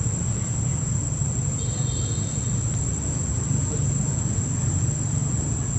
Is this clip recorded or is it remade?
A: recorded